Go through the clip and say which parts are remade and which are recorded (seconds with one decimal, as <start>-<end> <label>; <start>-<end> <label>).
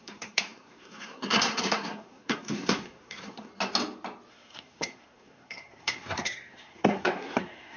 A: 0.0-3.5 remade; 3.5-4.3 recorded; 4.3-7.8 remade